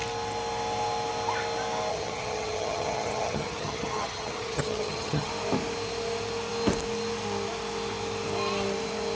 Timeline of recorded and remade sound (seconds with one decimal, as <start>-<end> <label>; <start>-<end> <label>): 0.0-1.9 recorded; 1.9-5.3 remade; 5.3-9.2 recorded